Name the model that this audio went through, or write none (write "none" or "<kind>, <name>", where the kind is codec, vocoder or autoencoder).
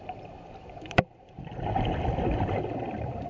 vocoder, BigVGAN v2